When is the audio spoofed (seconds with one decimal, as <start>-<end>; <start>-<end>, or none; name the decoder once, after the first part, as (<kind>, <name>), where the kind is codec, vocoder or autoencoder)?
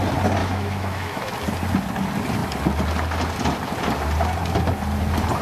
0.4-1.3 (autoencoder, DAC-VAE)